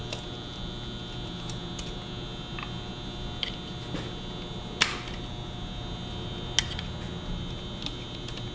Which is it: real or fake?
real